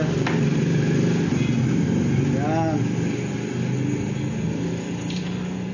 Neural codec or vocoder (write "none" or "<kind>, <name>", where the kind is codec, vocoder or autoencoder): none